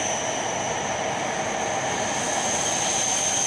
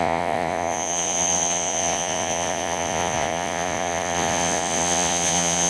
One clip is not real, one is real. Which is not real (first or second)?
second